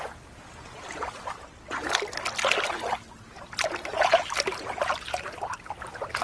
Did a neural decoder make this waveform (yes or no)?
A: no